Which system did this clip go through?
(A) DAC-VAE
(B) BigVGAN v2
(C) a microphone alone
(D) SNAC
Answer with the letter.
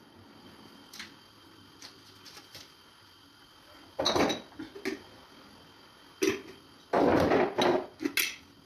C